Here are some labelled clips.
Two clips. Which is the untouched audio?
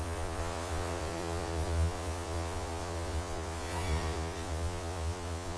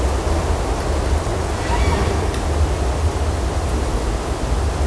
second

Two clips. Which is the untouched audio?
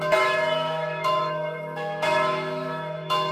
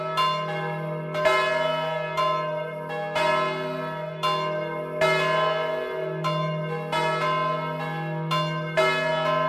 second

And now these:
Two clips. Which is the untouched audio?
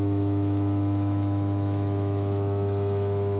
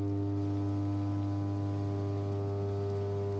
second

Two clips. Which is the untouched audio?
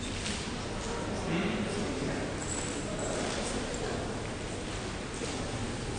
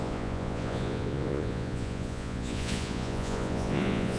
first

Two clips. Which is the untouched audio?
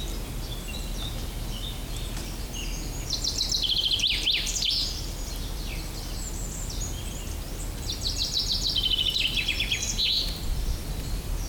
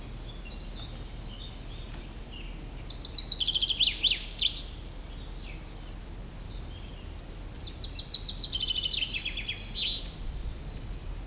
second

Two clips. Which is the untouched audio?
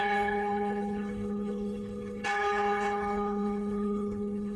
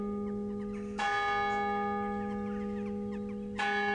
second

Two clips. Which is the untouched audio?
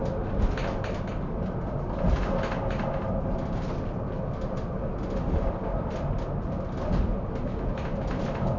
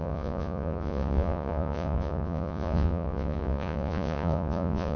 first